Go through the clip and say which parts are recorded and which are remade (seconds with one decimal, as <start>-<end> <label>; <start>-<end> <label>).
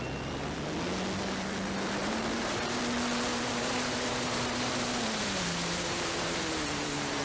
0.0-2.0 recorded; 2.0-2.8 remade; 2.8-3.3 recorded; 3.3-7.2 remade